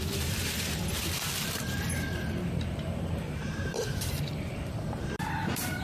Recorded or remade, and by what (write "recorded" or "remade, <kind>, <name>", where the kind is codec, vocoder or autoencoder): remade, vocoder, BigVGAN v2